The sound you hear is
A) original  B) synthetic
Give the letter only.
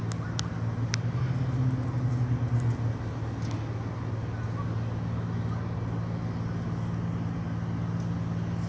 A